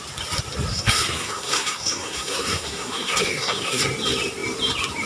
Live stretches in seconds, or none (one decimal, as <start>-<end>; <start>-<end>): 0.0-0.7; 3.8-5.1